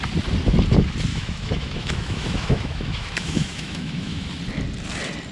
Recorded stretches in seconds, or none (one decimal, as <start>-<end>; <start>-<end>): 0.0-1.1; 4.3-5.3